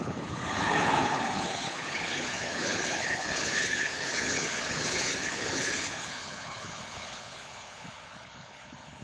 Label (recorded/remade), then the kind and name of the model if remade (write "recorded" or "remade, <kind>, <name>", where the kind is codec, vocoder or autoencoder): remade, codec, HILCodec